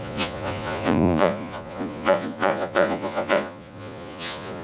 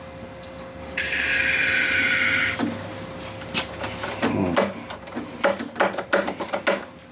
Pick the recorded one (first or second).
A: second